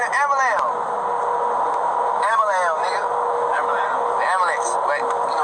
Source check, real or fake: real